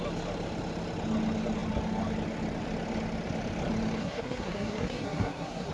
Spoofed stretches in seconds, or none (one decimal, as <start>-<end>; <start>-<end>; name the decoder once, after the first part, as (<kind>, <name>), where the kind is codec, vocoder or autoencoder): 4.0-5.7 (codec, SNAC)